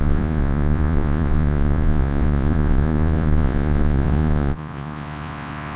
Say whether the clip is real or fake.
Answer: fake